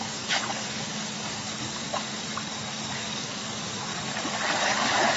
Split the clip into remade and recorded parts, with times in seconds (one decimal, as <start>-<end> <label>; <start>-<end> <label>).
0.0-2.1 remade; 2.1-2.9 recorded; 2.9-3.9 remade; 3.9-4.5 recorded; 4.5-5.2 remade